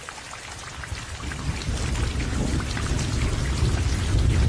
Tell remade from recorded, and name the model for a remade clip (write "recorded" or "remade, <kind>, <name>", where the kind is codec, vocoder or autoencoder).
recorded